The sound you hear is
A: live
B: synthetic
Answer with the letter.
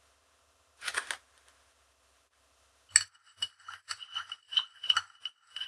A